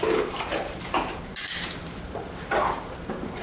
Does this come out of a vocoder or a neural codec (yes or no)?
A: yes